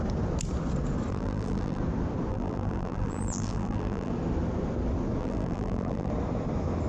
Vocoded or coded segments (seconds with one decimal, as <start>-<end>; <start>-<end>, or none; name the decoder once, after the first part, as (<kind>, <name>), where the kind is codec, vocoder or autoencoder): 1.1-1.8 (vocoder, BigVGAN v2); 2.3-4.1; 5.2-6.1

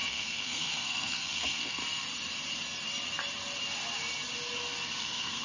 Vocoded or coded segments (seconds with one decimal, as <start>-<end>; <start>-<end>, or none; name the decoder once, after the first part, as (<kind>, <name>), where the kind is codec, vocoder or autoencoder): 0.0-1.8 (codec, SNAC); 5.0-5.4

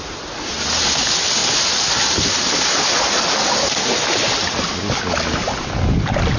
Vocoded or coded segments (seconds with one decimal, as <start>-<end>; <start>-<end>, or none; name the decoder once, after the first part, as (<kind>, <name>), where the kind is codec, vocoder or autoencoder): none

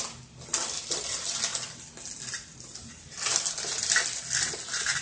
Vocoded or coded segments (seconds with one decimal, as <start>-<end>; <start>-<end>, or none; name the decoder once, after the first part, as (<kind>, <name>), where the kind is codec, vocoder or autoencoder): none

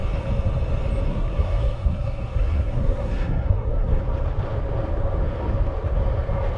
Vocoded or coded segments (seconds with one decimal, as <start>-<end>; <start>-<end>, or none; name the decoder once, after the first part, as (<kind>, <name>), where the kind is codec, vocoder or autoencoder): 1.1-4.0 (codec, SNAC)